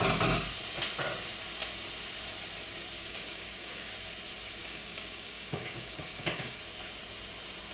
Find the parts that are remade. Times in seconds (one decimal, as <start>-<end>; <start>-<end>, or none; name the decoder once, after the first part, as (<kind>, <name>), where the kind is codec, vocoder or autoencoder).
3.0-3.9 (codec, DAC); 4.6-6.6